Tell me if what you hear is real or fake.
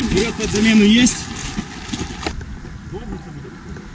real